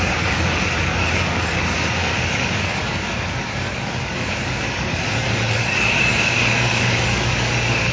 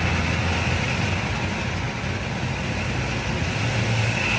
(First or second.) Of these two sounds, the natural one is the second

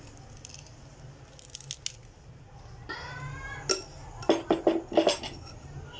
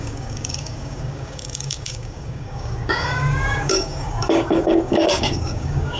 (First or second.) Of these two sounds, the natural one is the first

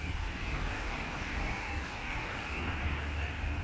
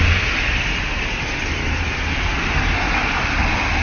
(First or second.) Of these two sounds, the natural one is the second